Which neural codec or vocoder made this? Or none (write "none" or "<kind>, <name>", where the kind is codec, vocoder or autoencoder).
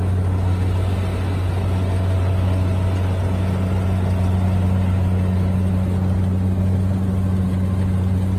none